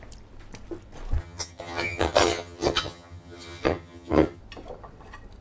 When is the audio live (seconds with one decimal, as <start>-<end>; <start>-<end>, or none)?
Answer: 0.0-1.2; 4.4-5.4